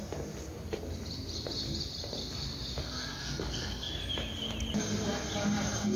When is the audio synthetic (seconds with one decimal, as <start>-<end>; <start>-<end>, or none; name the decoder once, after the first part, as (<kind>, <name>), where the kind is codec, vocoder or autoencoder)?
2.8-3.9 (codec, SNAC)